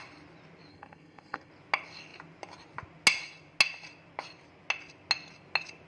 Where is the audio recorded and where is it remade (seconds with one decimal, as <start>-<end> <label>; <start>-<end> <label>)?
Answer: 0.0-0.7 recorded; 0.7-1.5 remade; 1.5-5.9 recorded